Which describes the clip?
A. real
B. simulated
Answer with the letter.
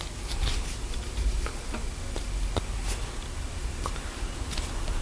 A